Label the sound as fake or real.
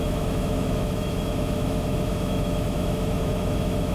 fake